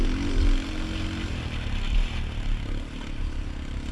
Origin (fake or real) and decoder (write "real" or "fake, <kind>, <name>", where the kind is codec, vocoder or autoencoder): real